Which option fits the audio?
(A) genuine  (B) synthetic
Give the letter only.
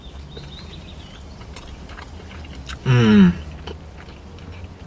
A